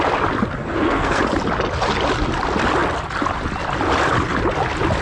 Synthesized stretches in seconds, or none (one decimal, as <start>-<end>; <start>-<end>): 0.6-1.2